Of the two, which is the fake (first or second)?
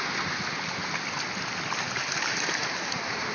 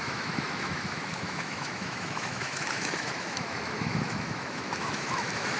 second